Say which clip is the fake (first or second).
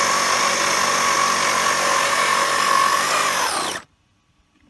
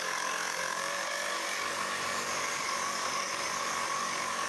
second